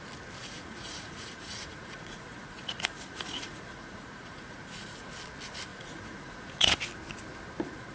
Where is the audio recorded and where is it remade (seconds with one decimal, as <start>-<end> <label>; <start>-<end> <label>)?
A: 0.0-0.4 recorded; 0.4-5.1 remade; 5.1-5.7 recorded; 5.7-6.8 remade; 6.8-7.9 recorded